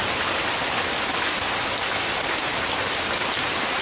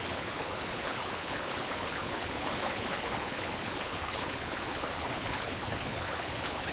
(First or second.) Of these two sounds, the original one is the first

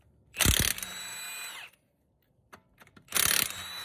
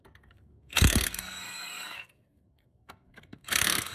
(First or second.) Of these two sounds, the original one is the first